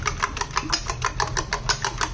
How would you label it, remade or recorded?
recorded